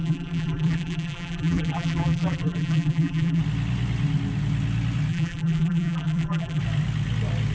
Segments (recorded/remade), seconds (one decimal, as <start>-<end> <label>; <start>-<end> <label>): 0.0-3.4 remade; 3.4-5.1 recorded; 5.1-6.6 remade; 6.6-7.5 recorded